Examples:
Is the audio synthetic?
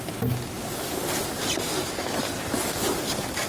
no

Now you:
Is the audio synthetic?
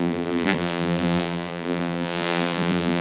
yes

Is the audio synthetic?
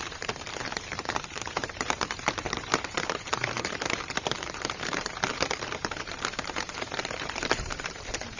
yes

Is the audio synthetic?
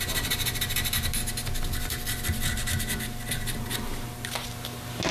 no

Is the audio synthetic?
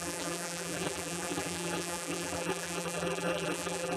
yes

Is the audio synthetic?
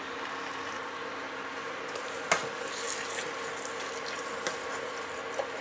no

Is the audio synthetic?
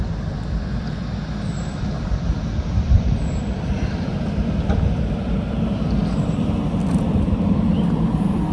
yes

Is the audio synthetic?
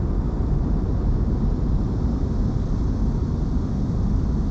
no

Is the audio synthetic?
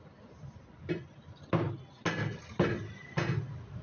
no